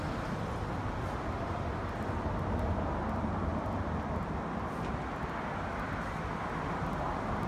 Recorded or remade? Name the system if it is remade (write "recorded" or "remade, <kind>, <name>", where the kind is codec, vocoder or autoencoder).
recorded